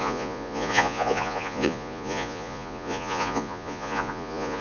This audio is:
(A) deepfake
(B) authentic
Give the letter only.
A